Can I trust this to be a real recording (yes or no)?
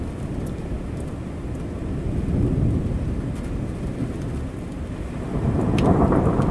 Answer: yes